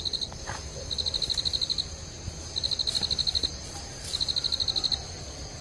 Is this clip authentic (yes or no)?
yes